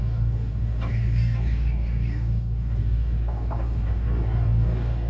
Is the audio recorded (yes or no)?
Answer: no